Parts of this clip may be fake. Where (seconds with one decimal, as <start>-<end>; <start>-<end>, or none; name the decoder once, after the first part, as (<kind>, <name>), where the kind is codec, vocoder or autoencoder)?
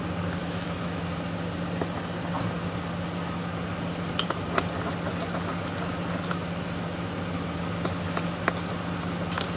0.4-1.0 (autoencoder, DAC-VAE)